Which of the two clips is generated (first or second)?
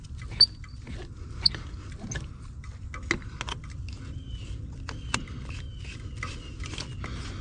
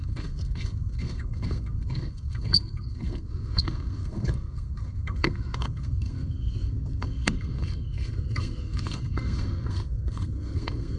second